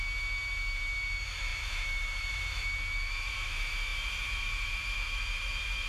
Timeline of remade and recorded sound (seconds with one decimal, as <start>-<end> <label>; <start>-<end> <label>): 0.0-5.9 remade

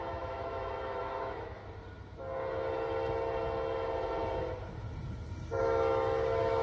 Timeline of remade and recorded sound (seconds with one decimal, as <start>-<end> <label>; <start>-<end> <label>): 0.0-1.6 remade; 1.6-5.6 recorded; 5.6-6.6 remade

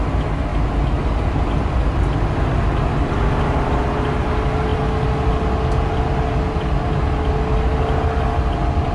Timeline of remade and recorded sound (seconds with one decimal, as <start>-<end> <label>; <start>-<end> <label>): 0.0-8.9 recorded

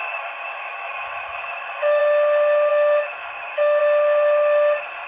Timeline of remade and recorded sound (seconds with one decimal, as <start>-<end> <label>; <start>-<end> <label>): 0.0-2.0 remade; 2.0-2.7 recorded; 2.7-3.8 remade; 3.8-5.1 recorded

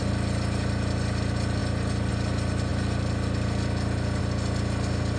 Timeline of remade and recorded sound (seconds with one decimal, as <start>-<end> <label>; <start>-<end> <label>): 0.0-5.2 recorded

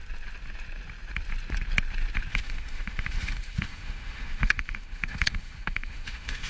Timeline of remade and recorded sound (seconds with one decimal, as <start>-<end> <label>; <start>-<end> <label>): 0.0-2.3 recorded; 2.3-6.5 remade

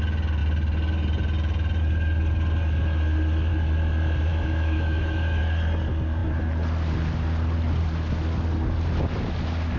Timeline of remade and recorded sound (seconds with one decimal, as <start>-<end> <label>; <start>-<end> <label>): 0.0-4.3 recorded; 4.3-5.4 remade; 5.4-9.8 recorded

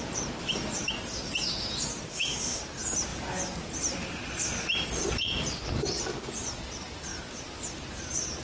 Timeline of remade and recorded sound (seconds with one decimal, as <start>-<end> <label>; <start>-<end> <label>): 0.0-2.1 recorded; 2.1-2.6 remade; 2.6-8.4 recorded